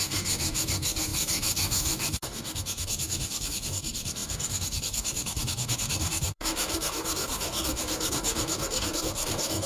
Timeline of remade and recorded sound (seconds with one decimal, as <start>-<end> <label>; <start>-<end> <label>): 0.0-9.7 remade